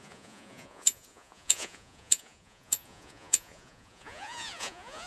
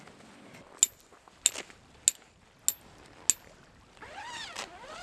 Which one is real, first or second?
second